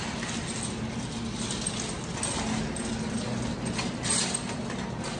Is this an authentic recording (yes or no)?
yes